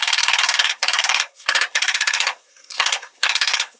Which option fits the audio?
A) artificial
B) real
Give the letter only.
A